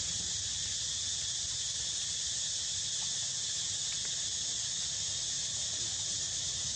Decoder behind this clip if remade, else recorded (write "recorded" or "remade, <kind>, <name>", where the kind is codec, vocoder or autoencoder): recorded